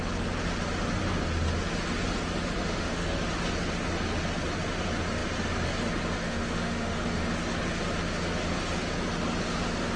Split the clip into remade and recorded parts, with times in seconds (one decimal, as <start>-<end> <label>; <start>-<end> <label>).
0.0-2.6 recorded; 2.6-3.3 remade; 3.3-6.2 recorded; 6.2-7.2 remade; 7.2-10.0 recorded

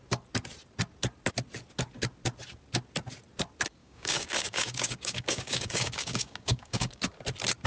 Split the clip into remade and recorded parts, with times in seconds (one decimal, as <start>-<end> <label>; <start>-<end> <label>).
0.0-3.8 recorded; 3.8-7.0 remade; 7.0-7.7 recorded

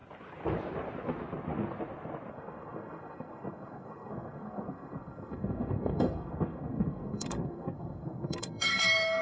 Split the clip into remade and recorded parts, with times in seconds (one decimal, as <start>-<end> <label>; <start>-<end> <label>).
0.0-2.3 recorded; 2.3-9.2 remade

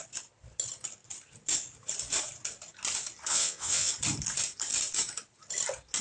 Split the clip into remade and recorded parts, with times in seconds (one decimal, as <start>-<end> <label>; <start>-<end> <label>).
0.0-3.3 recorded; 3.3-3.9 remade; 3.9-6.0 recorded

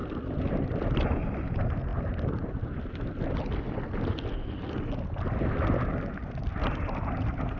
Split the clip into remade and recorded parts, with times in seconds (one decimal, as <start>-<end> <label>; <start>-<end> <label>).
0.0-7.6 recorded

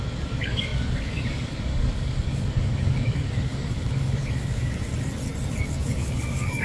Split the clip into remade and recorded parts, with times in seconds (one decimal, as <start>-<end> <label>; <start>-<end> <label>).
0.0-4.9 remade; 4.9-5.5 recorded; 5.5-6.6 remade

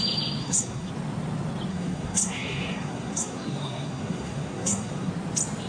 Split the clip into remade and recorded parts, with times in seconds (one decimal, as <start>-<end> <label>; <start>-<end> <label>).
0.0-0.4 recorded; 0.4-0.9 remade; 0.9-1.7 recorded; 1.7-5.1 remade; 5.1-5.7 recorded

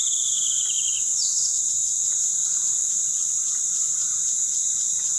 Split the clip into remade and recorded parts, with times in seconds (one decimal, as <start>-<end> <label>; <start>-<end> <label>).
0.0-0.5 remade; 0.5-5.2 recorded